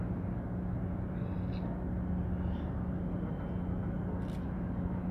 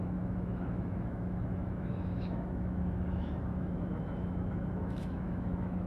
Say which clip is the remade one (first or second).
second